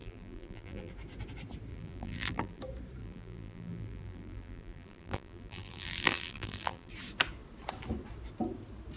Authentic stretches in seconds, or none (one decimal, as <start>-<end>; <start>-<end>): 0.9-1.7; 2.6-3.0; 6.9-9.0